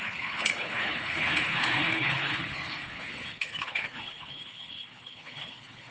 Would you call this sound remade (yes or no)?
yes